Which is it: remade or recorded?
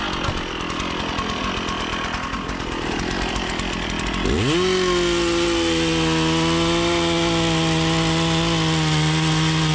recorded